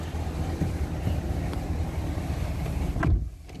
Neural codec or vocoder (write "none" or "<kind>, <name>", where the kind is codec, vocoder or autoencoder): none